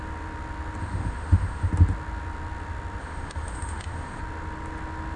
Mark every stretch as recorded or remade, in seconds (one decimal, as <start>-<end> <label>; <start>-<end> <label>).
0.0-0.8 recorded; 0.8-1.7 remade; 1.7-3.0 recorded; 3.0-4.2 remade; 4.2-5.2 recorded